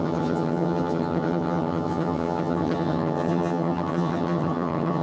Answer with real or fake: fake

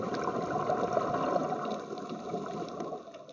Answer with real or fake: real